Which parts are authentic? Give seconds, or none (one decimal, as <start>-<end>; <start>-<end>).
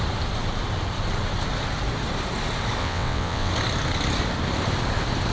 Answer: 0.0-2.8; 3.5-5.3